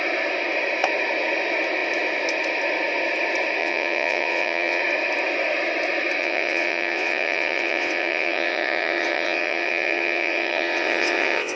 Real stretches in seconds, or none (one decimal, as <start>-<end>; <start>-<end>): 0.0-3.6; 4.8-6.2